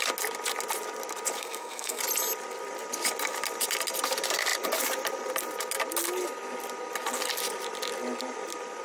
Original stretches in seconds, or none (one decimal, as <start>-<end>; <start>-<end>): 0.0-1.4; 2.0-8.8